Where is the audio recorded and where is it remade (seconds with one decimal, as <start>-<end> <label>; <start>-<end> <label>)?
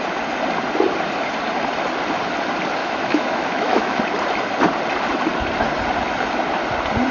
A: 0.0-2.8 recorded; 2.8-4.0 remade; 4.0-7.1 recorded